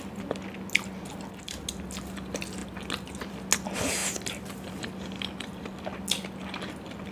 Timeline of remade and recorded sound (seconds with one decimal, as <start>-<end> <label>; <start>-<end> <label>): 0.0-4.0 recorded; 4.0-6.0 remade; 6.0-7.1 recorded